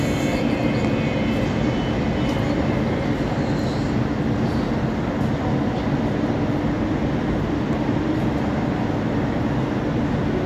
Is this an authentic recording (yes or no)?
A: yes